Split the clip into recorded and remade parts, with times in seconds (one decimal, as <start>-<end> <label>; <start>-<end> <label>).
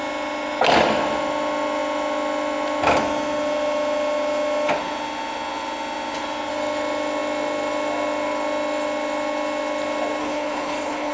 0.0-10.2 recorded; 10.2-11.1 remade